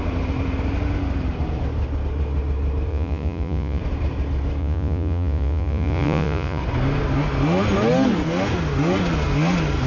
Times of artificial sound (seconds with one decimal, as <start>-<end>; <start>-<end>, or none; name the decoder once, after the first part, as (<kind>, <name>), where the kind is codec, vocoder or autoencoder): 2.9-3.8 (vocoder, Vocos); 4.6-6.6